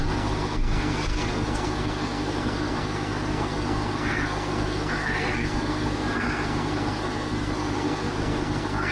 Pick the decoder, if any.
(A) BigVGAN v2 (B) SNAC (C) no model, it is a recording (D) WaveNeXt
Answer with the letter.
B